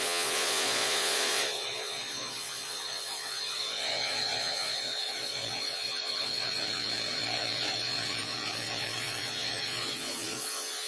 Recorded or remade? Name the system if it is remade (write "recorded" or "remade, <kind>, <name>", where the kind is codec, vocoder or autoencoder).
remade, vocoder, Vocos